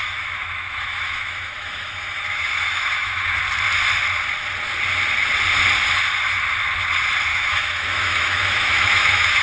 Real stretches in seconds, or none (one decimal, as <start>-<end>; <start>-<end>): 3.4-7.3